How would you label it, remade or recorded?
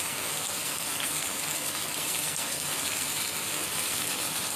remade